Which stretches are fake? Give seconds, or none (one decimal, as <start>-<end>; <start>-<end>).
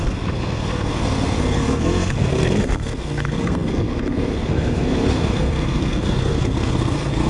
0.0-7.3